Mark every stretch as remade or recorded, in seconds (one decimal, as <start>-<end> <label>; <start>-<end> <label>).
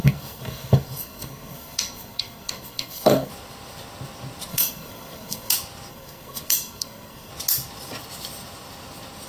0.0-3.3 remade; 3.3-4.5 recorded; 4.5-5.5 remade; 5.5-5.9 recorded; 5.9-7.3 remade; 7.3-9.3 recorded